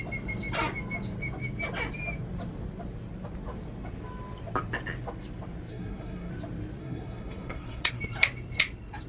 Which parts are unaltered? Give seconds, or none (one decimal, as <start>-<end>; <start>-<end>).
0.0-5.7; 6.3-6.8; 8.0-9.1